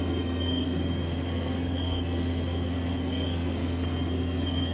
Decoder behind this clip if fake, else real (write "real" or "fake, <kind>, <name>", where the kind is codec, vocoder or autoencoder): fake, codec, SNAC